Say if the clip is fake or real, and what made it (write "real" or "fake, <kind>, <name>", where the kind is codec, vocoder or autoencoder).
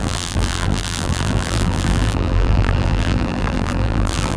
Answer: fake, vocoder, BigVGAN v2